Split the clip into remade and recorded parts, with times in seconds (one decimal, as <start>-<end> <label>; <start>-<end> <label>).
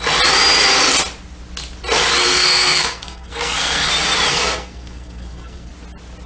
0.0-2.2 recorded; 2.2-3.9 remade; 3.9-4.3 recorded; 4.3-5.7 remade; 5.7-6.3 recorded